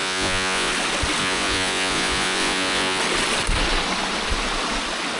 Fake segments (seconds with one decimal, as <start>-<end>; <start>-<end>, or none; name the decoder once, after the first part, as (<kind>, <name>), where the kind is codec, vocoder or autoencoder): 0.0-0.7 (vocoder, Vocos); 1.2-3.0